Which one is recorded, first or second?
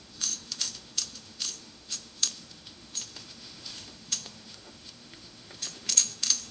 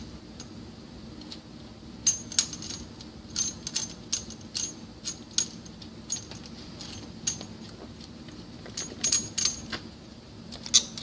second